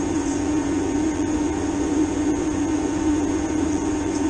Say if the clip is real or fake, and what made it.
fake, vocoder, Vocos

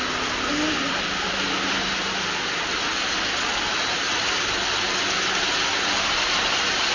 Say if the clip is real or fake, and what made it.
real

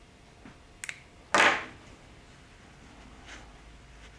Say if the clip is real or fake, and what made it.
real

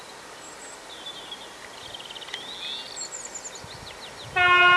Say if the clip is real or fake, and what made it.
real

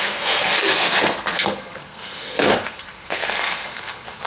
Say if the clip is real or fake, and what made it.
fake, codec, SNAC